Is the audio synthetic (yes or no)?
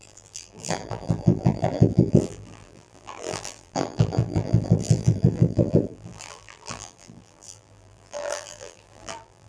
yes